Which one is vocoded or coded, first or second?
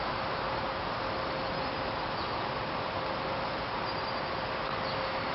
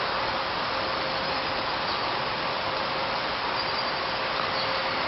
second